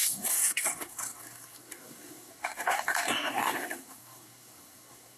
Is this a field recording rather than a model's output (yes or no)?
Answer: no